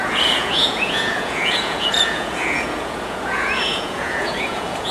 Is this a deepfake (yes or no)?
yes